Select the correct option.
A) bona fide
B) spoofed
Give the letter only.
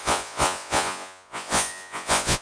B